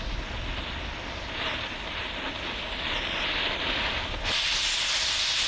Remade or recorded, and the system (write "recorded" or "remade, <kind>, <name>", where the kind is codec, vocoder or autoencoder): recorded